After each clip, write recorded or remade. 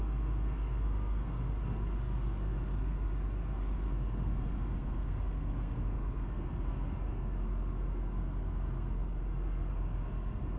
remade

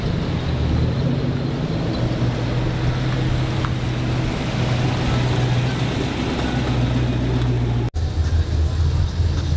recorded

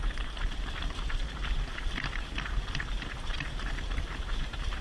recorded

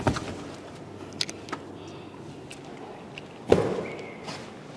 recorded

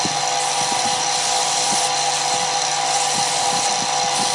recorded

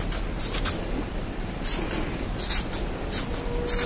recorded